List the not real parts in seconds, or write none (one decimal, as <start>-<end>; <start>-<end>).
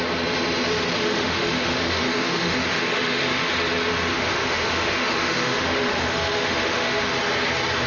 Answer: 1.0-3.5; 4.1-7.1